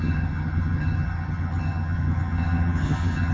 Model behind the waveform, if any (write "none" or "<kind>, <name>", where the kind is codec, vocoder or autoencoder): vocoder, HiFi-GAN